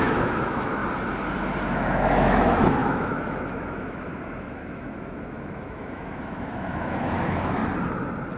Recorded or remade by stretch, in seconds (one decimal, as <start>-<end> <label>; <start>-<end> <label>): 0.0-0.8 remade; 0.8-1.6 recorded; 1.6-7.6 remade; 7.6-8.4 recorded